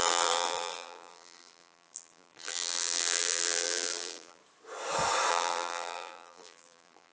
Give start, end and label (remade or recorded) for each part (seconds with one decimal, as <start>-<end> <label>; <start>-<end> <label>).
0.0-4.4 remade; 4.4-5.3 recorded; 5.3-7.1 remade